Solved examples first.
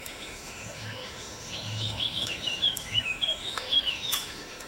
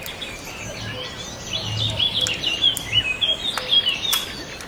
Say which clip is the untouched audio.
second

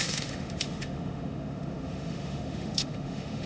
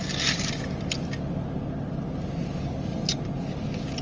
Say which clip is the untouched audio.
second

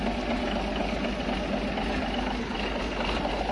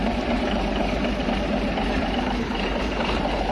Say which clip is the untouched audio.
first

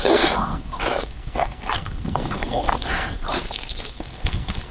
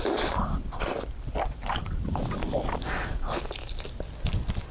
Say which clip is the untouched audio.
second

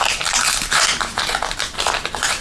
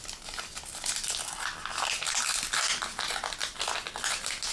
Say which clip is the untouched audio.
second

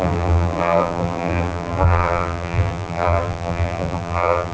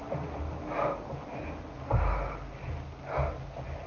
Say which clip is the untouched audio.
second